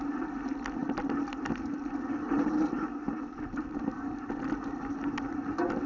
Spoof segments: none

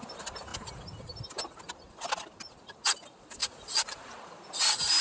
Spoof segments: 3.4-4.0

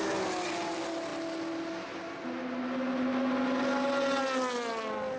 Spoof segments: none

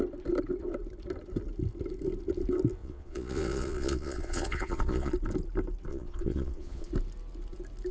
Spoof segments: 2.8-5.1; 5.9-6.9

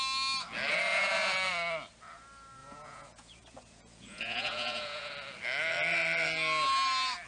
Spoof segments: 0.9-1.5; 2.6-5.1

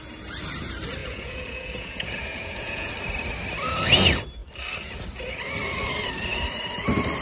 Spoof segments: 1.0-2.9

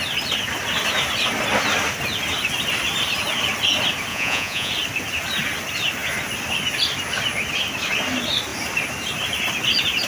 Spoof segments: 4.1-4.7

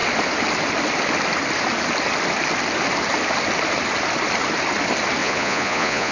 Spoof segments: 5.2-6.1